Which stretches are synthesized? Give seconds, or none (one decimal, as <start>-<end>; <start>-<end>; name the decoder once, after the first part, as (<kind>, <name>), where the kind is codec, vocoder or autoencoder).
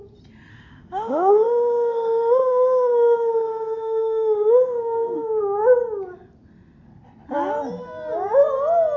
0.5-5.4 (autoencoder, DAC-VAE)